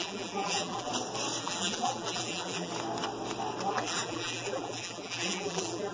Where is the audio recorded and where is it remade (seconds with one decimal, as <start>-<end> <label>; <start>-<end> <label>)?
0.0-0.9 remade; 0.9-1.4 recorded; 1.4-2.7 remade; 2.7-3.7 recorded; 3.7-5.9 remade